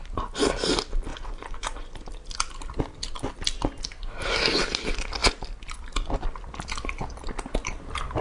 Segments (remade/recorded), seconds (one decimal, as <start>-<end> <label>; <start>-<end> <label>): 0.0-1.1 recorded; 1.1-1.9 remade; 1.9-8.2 recorded